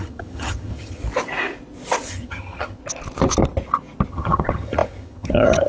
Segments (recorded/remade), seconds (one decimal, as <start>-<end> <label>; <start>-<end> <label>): 0.0-1.0 remade; 1.0-2.1 recorded; 2.1-2.8 remade; 2.8-4.1 recorded; 4.1-5.7 remade